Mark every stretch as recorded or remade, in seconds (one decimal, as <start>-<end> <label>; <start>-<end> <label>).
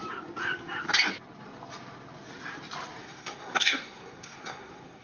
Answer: 0.0-3.0 recorded; 3.0-5.0 remade